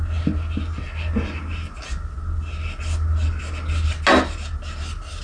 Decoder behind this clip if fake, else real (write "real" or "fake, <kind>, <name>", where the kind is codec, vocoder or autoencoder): real